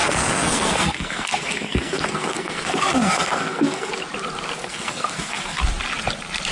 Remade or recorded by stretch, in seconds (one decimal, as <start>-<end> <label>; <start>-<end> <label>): 0.0-3.9 remade; 3.9-4.6 recorded; 4.6-5.6 remade; 5.6-6.5 recorded